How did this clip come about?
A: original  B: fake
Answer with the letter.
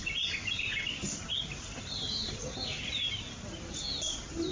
A